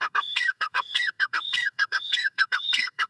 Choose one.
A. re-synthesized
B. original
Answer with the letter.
A